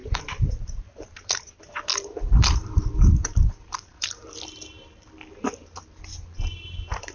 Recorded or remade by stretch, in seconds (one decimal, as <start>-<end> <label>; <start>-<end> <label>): 0.0-1.4 remade; 1.4-1.9 recorded; 1.9-4.3 remade; 4.3-7.1 recorded